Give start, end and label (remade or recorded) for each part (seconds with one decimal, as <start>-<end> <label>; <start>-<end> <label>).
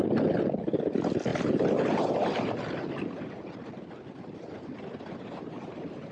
0.0-6.1 recorded